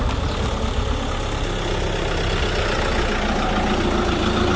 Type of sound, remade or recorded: recorded